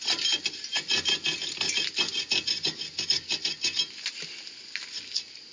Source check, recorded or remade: recorded